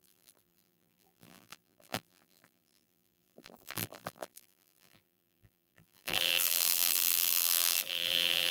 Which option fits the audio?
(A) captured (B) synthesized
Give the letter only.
B